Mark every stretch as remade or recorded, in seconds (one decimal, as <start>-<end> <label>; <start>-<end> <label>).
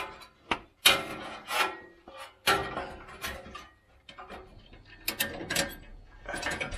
0.0-1.1 recorded; 1.1-1.6 remade; 1.6-5.9 recorded; 5.9-6.8 remade